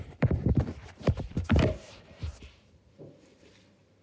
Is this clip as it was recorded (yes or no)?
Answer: no